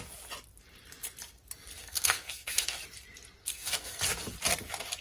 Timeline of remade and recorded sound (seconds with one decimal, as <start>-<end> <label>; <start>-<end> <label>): 0.0-1.8 recorded; 1.8-2.8 remade; 2.8-3.4 recorded; 3.4-4.0 remade; 4.0-5.0 recorded